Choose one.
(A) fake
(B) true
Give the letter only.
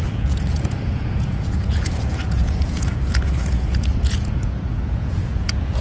A